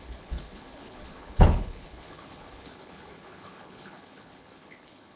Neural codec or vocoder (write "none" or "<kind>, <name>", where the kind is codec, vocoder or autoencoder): codec, HILCodec